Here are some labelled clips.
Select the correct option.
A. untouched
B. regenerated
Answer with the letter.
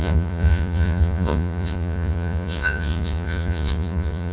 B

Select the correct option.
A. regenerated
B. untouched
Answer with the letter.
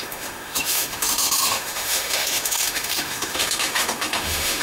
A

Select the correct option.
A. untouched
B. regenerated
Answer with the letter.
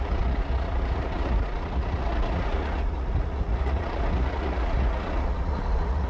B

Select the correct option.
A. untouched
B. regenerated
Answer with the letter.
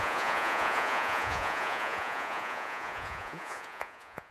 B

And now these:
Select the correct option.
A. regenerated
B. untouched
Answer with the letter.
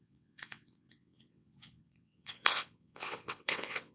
A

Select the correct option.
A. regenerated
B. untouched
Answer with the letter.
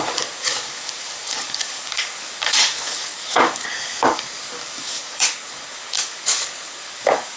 A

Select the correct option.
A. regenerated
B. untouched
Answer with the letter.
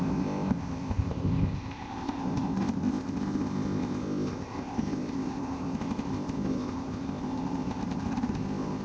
A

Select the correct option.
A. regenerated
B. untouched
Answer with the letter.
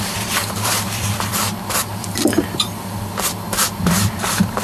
A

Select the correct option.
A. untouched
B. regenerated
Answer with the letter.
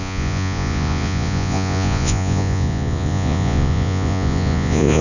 B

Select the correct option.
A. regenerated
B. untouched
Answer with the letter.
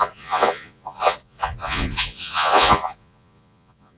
A